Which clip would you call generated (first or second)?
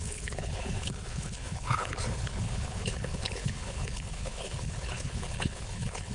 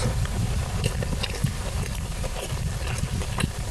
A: first